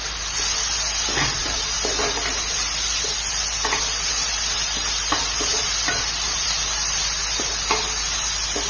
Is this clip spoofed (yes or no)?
no